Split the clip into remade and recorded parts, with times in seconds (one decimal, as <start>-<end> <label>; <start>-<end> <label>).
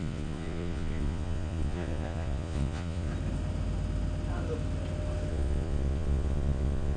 0.0-3.1 remade; 3.1-5.3 recorded; 5.3-7.0 remade